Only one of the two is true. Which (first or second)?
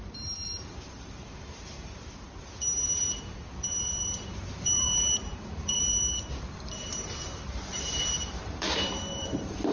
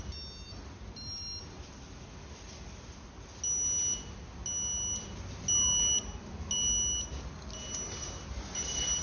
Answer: second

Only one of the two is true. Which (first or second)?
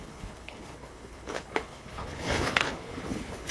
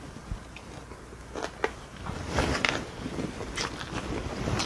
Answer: second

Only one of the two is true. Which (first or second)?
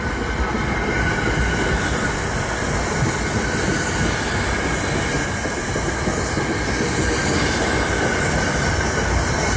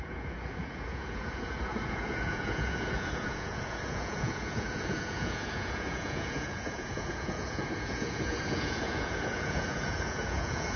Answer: first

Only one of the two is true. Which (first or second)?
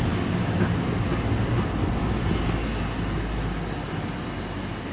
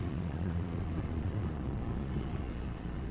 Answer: first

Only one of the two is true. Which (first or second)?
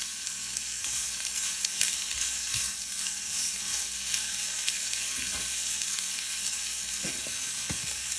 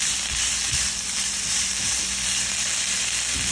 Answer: second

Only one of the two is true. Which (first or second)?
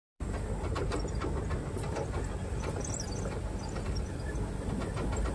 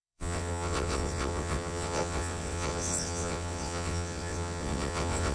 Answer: first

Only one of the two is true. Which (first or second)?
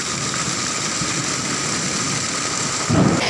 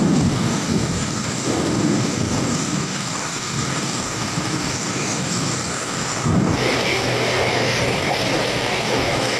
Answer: first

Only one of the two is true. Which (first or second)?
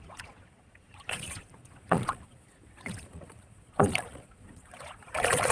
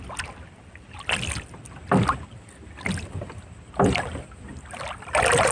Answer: second